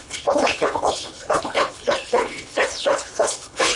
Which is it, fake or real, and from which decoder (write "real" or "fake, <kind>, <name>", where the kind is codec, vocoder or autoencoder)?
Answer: fake, codec, HILCodec